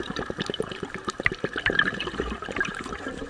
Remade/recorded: remade